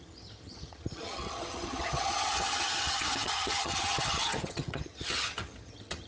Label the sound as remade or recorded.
remade